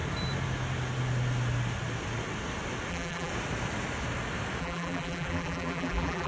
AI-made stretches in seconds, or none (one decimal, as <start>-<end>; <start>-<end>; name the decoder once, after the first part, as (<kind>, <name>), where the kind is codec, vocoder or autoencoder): 2.9-3.3 (vocoder, BigVGAN v2); 4.6-6.3